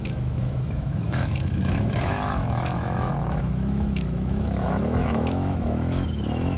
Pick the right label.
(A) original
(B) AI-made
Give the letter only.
B